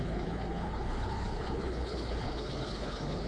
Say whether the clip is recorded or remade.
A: remade